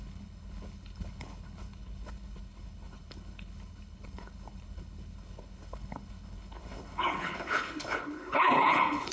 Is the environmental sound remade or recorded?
remade